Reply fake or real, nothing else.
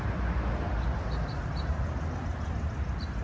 real